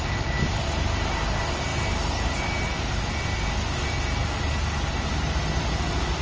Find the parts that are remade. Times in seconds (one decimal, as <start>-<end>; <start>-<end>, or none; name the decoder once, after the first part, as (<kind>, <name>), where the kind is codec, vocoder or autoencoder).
none